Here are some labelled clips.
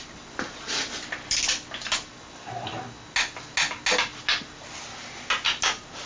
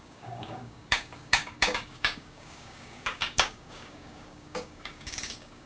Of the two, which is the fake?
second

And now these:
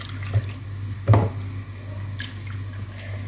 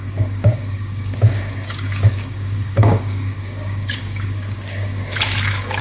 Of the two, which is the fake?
second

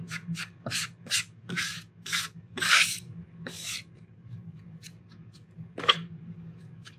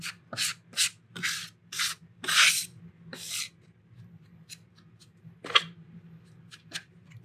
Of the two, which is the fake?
first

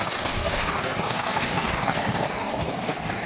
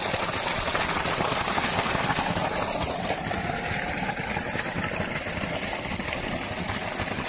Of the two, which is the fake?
first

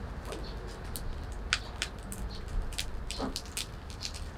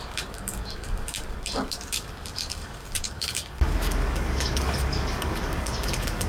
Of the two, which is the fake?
second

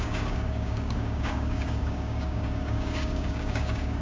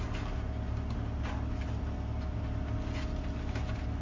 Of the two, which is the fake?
first